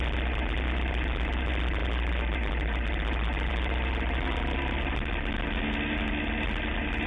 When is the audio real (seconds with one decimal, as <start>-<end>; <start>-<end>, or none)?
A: 0.0-7.1